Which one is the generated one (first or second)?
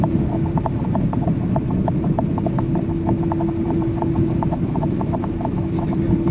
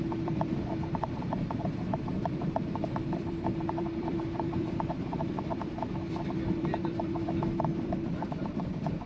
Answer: second